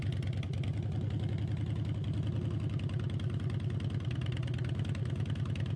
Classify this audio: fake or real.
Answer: real